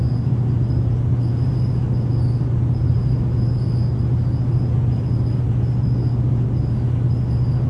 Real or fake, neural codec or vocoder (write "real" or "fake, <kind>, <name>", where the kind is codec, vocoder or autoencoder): real